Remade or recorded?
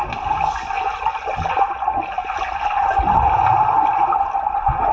recorded